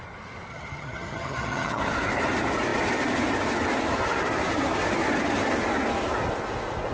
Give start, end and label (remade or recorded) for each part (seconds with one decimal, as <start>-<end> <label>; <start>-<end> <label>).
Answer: 0.0-0.5 recorded; 0.5-1.8 remade; 1.8-6.9 recorded